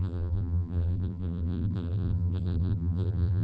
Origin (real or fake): fake